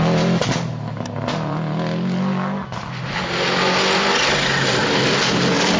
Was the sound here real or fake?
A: real